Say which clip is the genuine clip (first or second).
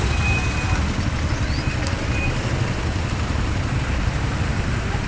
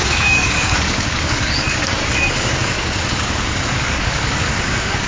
first